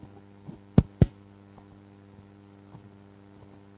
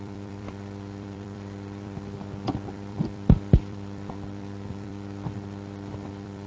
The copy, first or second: second